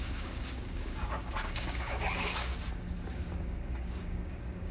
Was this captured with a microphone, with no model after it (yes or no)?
no